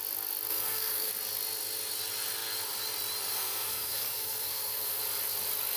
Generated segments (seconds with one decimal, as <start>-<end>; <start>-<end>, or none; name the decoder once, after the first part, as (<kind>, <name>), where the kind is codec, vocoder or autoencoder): 0.5-1.1 (codec, SNAC); 3.3-5.0